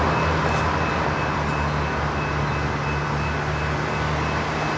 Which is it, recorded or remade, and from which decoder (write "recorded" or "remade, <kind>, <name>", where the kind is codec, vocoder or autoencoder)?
recorded